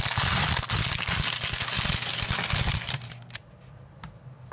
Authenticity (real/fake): real